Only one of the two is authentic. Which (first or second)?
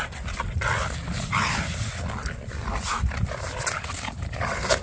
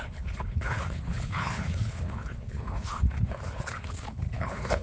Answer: first